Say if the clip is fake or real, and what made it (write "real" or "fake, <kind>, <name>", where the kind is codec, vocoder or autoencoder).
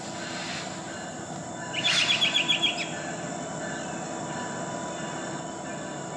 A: real